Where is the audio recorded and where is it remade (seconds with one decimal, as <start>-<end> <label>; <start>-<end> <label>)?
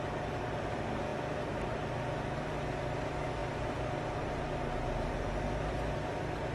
0.0-6.5 recorded